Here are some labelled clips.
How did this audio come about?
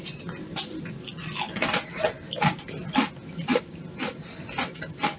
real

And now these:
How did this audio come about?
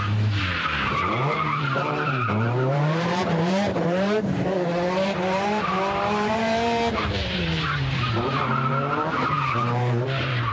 fake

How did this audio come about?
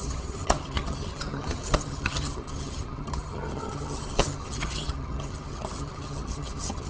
fake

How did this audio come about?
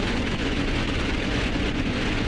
fake